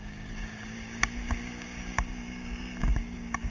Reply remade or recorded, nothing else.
remade